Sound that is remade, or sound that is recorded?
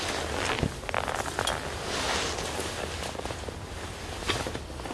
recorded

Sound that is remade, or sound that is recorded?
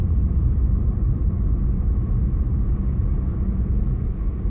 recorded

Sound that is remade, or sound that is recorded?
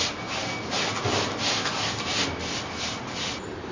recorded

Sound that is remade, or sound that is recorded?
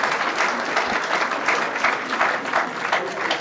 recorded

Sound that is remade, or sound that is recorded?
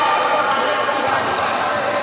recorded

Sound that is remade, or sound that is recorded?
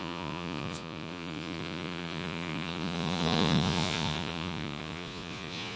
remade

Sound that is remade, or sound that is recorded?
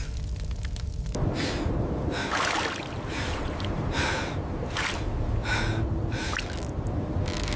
recorded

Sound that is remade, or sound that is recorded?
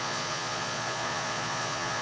remade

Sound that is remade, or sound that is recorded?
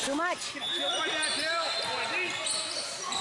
recorded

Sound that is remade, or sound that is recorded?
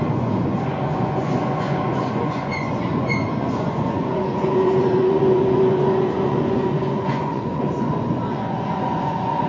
remade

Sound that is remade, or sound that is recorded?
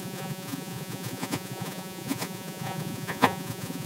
remade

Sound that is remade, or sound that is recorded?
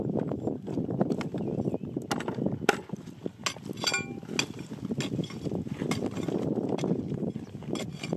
recorded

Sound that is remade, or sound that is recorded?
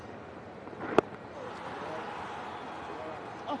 recorded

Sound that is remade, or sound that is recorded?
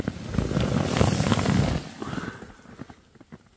recorded